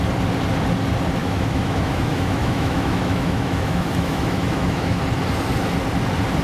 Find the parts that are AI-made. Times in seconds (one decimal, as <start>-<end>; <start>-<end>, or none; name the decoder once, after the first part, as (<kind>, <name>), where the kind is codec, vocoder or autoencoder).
1.2-5.0 (autoencoder, DAC-VAE)